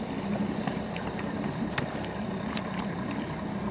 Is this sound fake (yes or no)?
no